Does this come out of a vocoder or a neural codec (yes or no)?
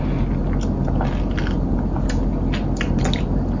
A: no